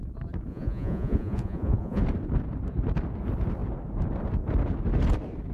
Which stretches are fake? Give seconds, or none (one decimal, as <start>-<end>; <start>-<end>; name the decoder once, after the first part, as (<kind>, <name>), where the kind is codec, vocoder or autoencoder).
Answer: 0.5-2.0 (vocoder, Vocos)